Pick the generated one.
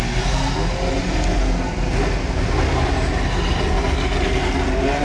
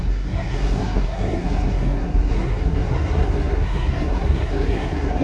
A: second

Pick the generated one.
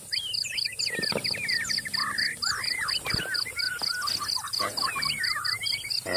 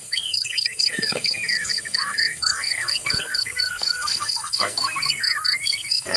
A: second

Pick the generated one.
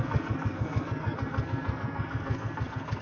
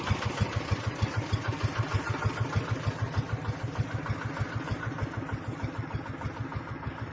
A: first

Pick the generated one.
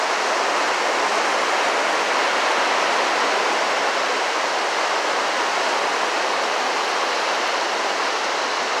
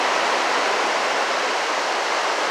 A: second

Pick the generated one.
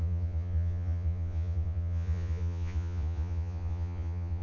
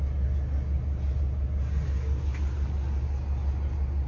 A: first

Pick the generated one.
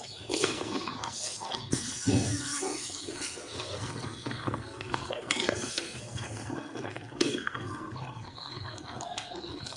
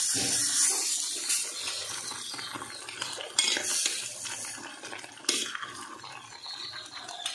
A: first